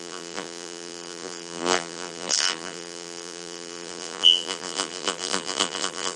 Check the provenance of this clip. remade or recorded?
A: remade